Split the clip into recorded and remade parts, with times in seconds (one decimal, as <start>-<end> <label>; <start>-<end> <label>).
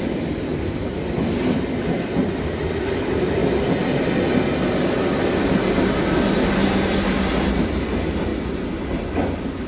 0.0-0.5 remade; 0.5-2.2 recorded; 2.2-3.4 remade; 3.4-7.6 recorded; 7.6-8.3 remade; 8.3-9.7 recorded